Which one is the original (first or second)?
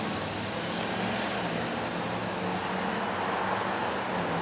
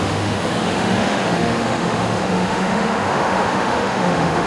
first